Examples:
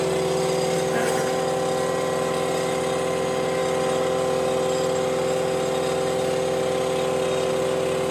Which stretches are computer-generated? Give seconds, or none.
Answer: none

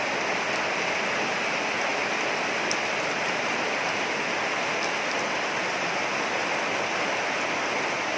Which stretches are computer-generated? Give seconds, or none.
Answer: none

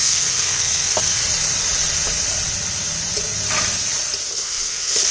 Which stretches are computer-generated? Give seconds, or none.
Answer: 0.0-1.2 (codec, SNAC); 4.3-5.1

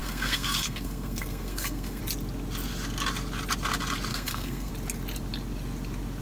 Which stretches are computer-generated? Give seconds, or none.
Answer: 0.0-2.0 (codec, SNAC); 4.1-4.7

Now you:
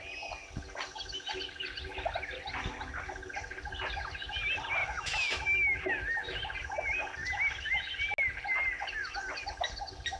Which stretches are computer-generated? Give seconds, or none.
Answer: 4.8-5.8 (autoencoder, DAC-VAE)